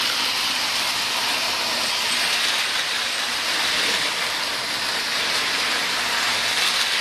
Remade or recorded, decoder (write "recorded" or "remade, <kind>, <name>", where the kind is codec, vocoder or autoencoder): recorded